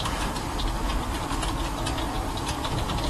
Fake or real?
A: fake